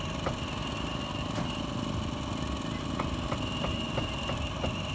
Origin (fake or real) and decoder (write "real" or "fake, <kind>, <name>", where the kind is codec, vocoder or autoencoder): real